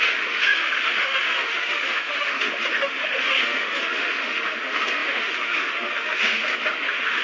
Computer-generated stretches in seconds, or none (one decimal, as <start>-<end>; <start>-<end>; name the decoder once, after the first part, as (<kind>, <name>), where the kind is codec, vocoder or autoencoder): 0.0-7.2 (autoencoder, DAC-VAE)